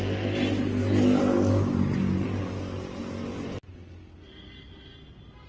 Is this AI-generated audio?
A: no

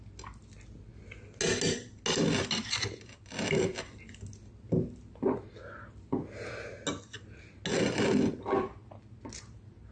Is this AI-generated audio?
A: no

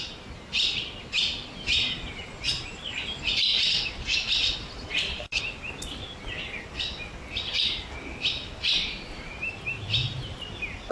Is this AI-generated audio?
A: no